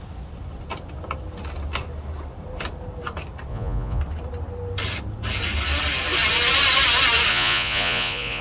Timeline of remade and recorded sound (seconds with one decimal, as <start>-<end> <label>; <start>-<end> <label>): 0.0-3.5 recorded; 3.5-4.0 remade; 4.0-7.3 recorded; 7.3-8.4 remade